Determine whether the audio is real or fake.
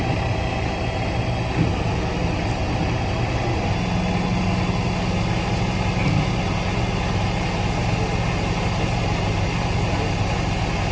real